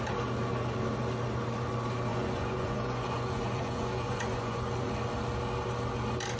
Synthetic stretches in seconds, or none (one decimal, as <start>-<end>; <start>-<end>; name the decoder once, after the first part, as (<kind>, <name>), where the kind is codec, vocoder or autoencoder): 2.1-4.7 (vocoder, Vocos)